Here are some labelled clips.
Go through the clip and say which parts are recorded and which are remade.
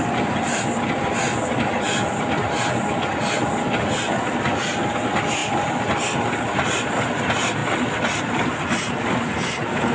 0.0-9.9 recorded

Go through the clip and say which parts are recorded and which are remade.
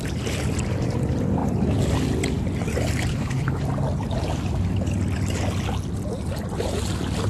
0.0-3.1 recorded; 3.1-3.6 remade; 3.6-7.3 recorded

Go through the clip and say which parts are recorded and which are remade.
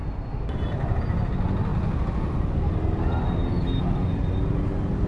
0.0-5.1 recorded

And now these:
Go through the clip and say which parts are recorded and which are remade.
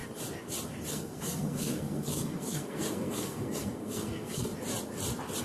0.0-0.9 recorded; 0.9-4.5 remade; 4.5-5.4 recorded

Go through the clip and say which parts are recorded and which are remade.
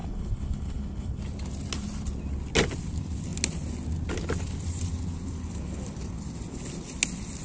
0.0-1.2 remade; 1.2-7.4 recorded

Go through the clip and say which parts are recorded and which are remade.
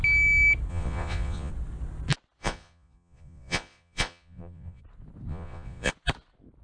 0.0-0.7 recorded; 0.7-1.5 remade; 1.5-2.4 recorded; 2.4-4.8 remade; 4.8-5.3 recorded; 5.3-5.9 remade; 5.9-6.6 recorded